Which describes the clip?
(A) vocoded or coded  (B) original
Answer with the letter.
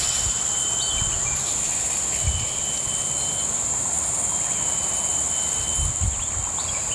B